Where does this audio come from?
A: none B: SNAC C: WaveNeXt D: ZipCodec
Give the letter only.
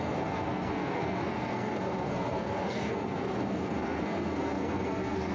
B